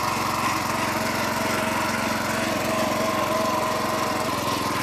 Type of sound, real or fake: real